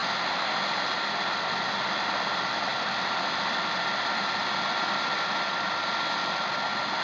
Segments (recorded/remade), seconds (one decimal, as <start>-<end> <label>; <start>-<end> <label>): 0.0-2.7 recorded; 2.7-6.0 remade; 6.0-7.0 recorded